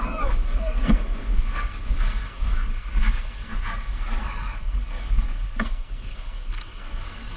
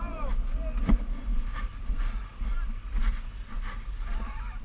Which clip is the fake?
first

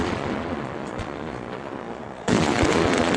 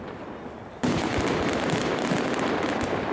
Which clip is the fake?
first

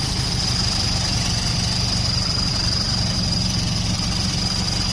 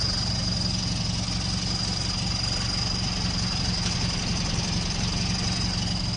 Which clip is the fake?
first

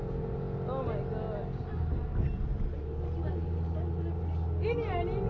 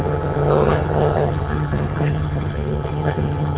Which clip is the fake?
second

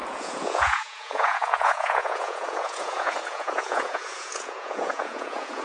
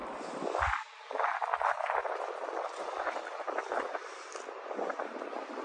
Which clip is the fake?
first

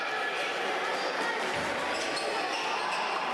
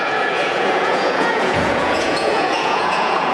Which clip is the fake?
second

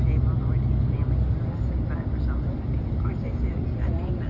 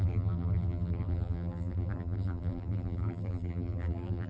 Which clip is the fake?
second